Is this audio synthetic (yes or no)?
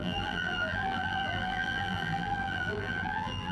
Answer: yes